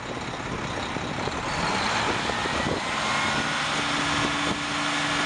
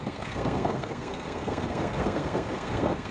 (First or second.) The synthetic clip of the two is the second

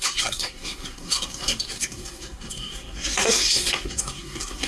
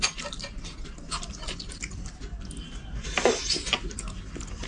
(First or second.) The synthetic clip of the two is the first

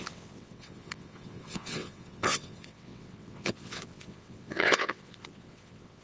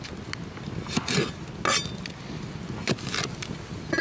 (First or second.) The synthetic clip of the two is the first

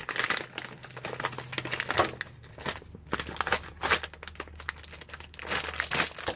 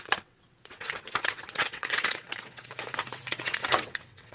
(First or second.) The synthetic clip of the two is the second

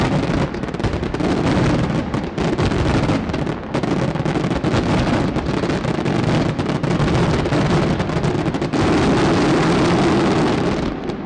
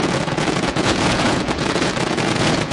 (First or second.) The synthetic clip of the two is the second